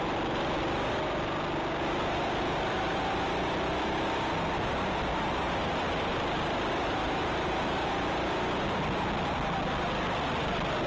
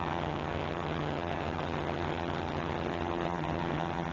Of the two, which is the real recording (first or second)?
first